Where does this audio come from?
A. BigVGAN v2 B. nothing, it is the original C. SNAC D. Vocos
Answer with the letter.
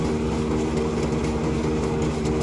B